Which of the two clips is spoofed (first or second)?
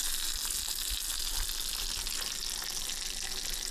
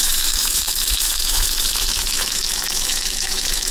second